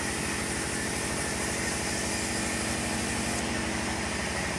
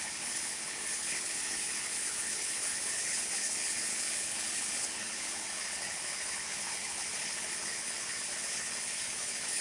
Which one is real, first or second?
first